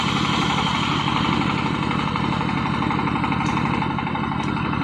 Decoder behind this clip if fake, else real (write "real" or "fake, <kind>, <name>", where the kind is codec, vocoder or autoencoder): real